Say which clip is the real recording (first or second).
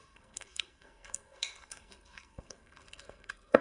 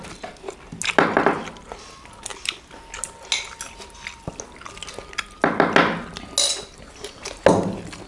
second